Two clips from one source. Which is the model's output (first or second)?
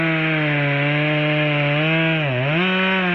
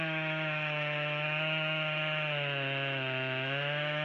second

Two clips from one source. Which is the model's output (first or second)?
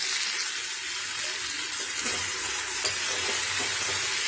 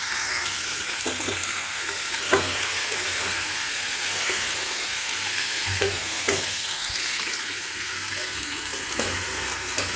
second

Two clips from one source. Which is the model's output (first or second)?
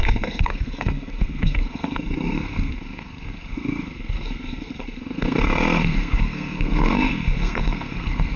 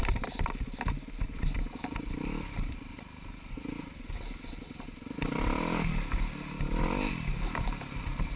first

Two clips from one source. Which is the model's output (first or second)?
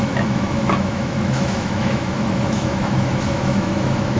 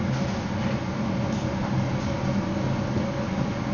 first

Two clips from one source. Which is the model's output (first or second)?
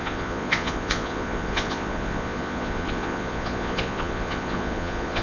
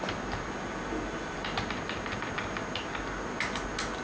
first